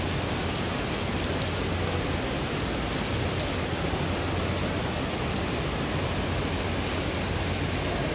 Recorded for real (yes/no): yes